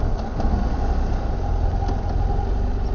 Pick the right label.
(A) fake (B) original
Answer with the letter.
B